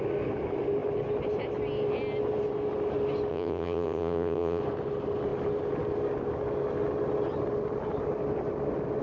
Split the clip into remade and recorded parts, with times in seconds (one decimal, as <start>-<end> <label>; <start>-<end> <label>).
0.0-3.3 recorded; 3.3-4.6 remade; 4.6-9.0 recorded